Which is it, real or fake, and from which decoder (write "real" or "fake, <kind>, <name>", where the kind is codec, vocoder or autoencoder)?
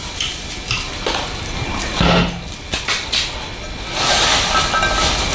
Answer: real